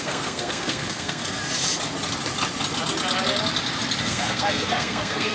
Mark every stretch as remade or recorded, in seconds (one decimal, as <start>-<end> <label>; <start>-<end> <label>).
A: 0.0-1.4 remade; 1.4-4.0 recorded; 4.0-5.3 remade